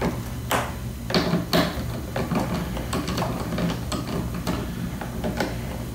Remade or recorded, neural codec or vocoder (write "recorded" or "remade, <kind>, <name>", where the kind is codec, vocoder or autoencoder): recorded